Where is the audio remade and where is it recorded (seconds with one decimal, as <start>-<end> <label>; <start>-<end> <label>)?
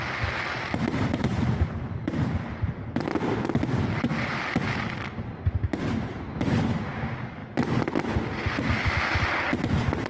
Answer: 0.0-10.1 recorded